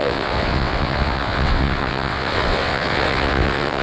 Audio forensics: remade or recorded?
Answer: remade